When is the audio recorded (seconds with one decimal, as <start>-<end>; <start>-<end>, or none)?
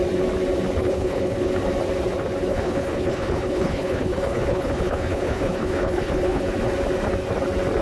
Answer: 0.0-0.8; 1.5-2.5; 6.4-7.8